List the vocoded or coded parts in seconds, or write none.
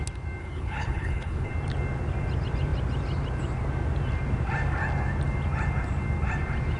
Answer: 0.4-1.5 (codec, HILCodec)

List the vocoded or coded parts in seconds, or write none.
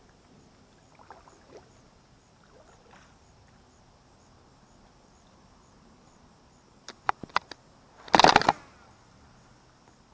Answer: none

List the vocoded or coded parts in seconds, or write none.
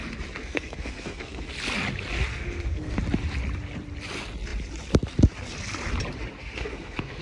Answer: 0.4-1.5 (codec, SNAC); 2.3-3.0; 6.4-7.2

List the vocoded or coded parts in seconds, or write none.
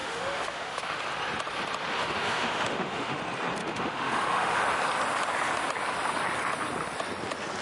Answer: 0.0-1.0 (autoencoder, DAC-VAE); 1.9-3.2; 3.6-4.6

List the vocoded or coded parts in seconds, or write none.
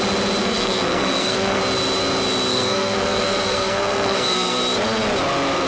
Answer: 0.4-1.6 (codec, SNAC); 2.5-4.6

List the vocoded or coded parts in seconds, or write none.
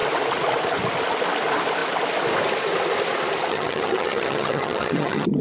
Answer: 3.5-5.4 (vocoder, HiFi-GAN)